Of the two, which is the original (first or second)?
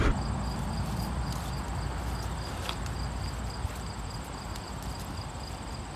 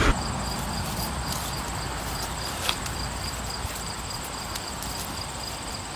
first